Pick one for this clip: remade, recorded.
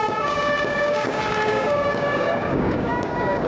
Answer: remade